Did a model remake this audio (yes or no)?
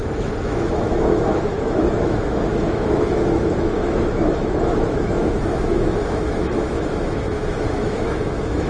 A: yes